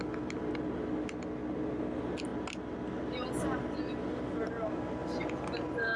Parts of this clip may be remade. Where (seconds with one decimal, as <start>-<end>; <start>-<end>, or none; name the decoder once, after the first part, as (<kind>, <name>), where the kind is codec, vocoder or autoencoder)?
none